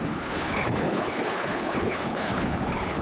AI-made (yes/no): yes